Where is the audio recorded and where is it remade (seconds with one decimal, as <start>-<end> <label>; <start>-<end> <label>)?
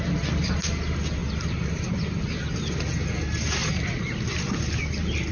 0.0-1.2 recorded; 1.2-1.8 remade; 1.8-5.3 recorded